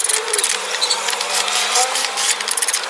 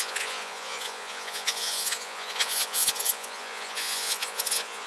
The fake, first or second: second